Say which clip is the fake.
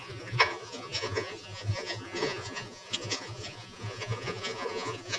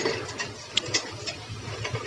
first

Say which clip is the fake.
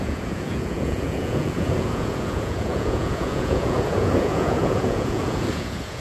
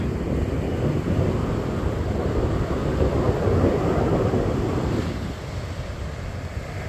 first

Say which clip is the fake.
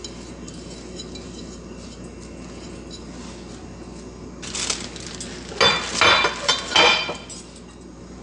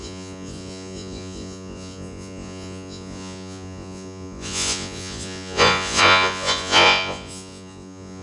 second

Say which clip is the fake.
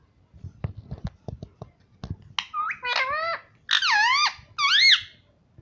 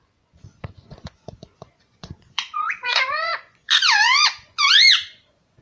second